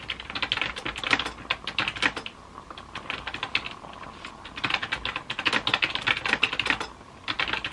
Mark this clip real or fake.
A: real